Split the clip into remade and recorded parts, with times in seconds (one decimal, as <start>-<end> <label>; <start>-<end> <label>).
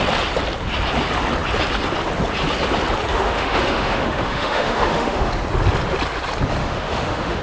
0.0-3.1 recorded; 3.1-5.3 remade; 5.3-6.6 recorded; 6.6-7.4 remade